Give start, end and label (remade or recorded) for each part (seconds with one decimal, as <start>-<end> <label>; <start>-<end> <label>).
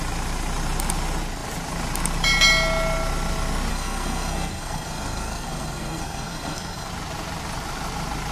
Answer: 0.0-3.7 recorded; 3.7-6.9 remade; 6.9-8.3 recorded